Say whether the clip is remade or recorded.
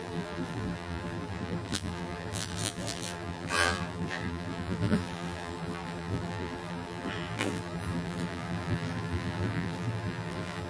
remade